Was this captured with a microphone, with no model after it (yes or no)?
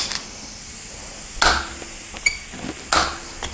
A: yes